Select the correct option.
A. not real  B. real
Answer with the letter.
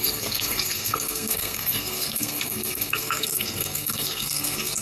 A